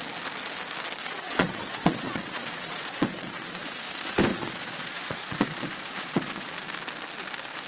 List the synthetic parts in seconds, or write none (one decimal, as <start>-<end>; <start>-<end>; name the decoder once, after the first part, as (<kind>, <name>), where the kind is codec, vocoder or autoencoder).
1.0-3.8 (vocoder, Vocos); 4.3-6.5